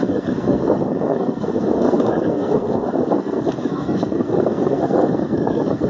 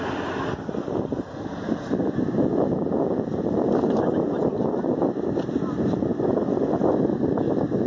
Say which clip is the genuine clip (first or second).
second